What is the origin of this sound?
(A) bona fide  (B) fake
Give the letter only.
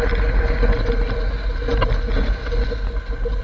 A